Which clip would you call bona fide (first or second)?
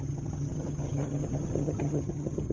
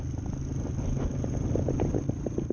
second